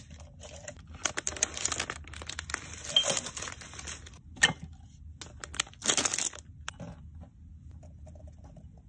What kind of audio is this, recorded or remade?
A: recorded